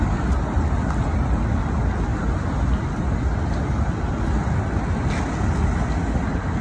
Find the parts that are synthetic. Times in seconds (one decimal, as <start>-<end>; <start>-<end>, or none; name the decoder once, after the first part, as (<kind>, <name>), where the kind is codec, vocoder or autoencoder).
none